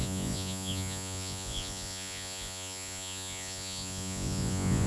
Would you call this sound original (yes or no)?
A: no